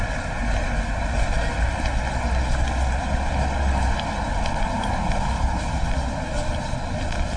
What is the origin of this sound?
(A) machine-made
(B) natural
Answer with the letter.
B